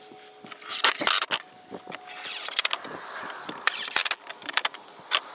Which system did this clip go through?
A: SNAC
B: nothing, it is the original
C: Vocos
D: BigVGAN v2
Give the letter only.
B